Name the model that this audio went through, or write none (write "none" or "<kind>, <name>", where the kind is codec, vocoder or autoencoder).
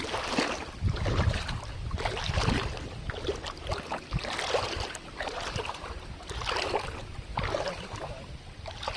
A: none